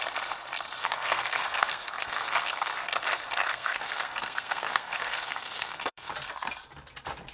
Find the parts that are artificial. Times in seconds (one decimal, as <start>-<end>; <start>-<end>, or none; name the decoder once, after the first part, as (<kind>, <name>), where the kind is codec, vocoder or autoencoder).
0.8-2.7 (codec, SNAC); 3.5-6.1